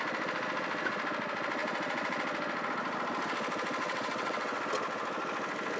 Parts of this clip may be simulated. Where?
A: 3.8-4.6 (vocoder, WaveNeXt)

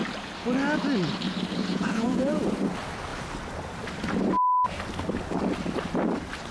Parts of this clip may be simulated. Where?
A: 1.7-2.4 (vocoder, Vocos)

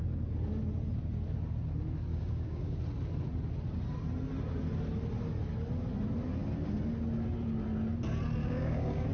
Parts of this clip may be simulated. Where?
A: 2.1-2.8 (codec, DAC); 8.4-9.1

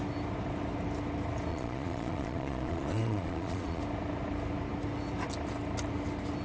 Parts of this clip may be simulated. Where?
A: 1.5-3.8 (vocoder, Vocos)